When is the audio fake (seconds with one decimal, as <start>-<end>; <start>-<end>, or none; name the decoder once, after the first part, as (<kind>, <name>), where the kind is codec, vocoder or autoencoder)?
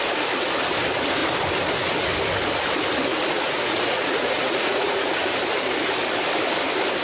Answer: 3.1-5.1 (vocoder, Vocos)